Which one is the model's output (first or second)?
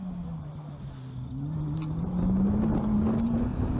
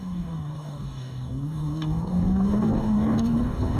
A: second